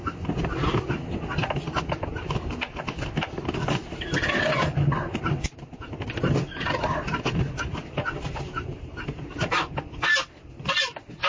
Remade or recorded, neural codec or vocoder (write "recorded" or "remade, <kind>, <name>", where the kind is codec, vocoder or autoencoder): recorded